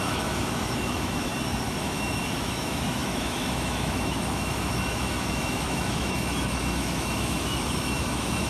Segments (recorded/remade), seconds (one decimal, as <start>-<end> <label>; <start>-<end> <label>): 0.0-1.3 remade; 1.3-1.8 recorded; 1.8-8.5 remade